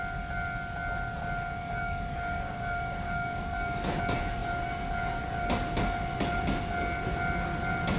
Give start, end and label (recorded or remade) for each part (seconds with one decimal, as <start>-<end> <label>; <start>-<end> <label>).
0.0-1.6 recorded; 1.6-4.0 remade; 4.0-8.0 recorded